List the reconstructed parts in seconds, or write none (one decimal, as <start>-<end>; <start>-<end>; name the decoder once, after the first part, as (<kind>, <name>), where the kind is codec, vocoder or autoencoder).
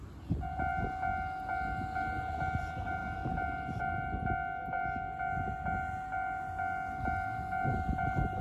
3.0-3.8 (vocoder, BigVGAN v2)